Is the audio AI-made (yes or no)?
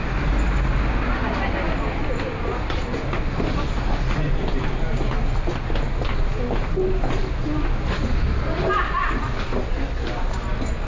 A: no